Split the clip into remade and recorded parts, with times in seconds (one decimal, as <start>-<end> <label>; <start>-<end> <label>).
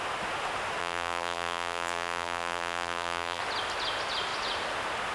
0.0-0.8 recorded; 0.8-3.4 remade; 3.4-5.1 recorded